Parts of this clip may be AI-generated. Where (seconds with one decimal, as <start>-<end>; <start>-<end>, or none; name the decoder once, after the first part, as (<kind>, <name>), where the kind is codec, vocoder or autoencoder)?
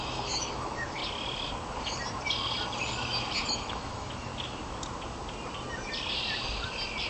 0.0-1.0 (autoencoder, DAC-VAE); 3.5-4.3